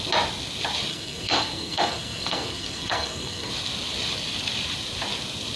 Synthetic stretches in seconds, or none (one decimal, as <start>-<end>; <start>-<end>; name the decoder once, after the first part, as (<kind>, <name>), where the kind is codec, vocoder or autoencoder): 0.9-3.5 (codec, SNAC)